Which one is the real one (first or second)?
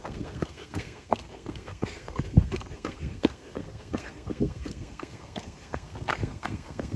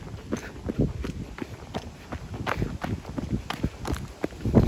second